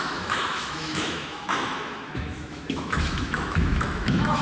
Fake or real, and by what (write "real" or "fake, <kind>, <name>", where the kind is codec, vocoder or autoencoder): fake, autoencoder, DAC-VAE